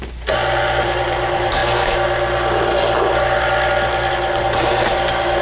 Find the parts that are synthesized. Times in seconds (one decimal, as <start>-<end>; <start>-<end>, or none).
0.0-1.6; 4.1-5.4